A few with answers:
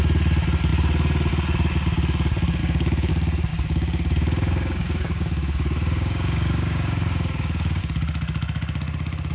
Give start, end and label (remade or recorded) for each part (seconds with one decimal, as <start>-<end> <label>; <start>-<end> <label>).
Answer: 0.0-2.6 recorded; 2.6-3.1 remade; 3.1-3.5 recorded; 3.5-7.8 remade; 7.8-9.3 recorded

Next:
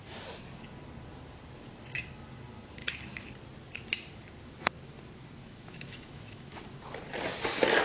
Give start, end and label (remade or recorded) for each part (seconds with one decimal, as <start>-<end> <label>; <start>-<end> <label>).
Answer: 0.0-2.8 recorded; 2.8-3.3 remade; 3.3-5.4 recorded; 5.4-6.6 remade; 6.6-7.8 recorded

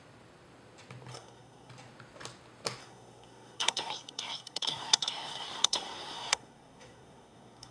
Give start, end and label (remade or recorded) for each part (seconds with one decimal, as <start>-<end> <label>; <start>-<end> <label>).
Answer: 0.0-1.1 recorded; 1.1-1.7 remade; 1.7-2.8 recorded; 2.8-7.7 remade

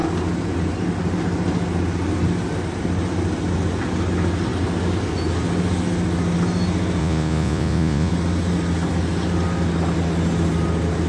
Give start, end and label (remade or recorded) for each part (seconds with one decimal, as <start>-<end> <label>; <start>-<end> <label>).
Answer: 0.0-7.0 recorded; 7.0-8.1 remade; 8.1-11.1 recorded